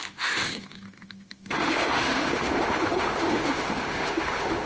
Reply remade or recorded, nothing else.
remade